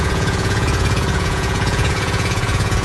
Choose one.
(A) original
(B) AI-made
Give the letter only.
B